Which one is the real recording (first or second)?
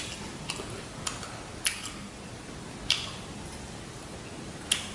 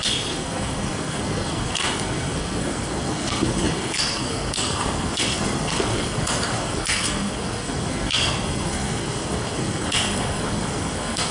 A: first